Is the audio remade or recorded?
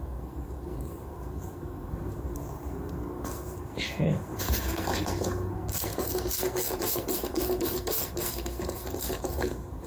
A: remade